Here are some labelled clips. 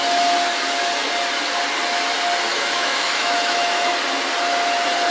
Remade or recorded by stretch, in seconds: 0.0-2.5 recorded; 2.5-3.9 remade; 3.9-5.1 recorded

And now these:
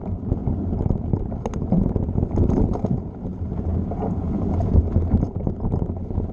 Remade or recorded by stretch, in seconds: 0.0-6.3 remade

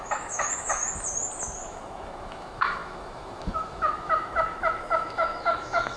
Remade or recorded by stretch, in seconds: 0.0-0.8 remade; 0.8-1.7 recorded; 1.7-6.0 remade

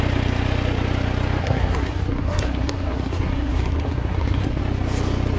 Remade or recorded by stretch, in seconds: 0.0-1.4 recorded; 1.4-4.6 remade; 4.6-5.4 recorded

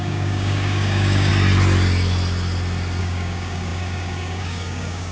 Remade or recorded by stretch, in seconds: 0.0-1.3 remade; 1.3-3.0 recorded; 3.0-5.1 remade

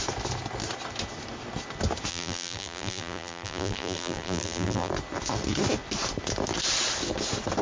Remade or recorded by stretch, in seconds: 0.0-2.1 recorded; 2.1-4.9 remade; 4.9-7.6 recorded

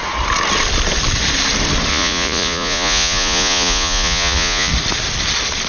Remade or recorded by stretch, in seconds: 0.0-1.9 recorded; 1.9-4.7 remade; 4.7-5.7 recorded